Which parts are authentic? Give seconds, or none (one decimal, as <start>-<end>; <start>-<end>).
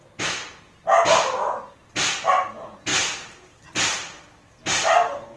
0.0-5.4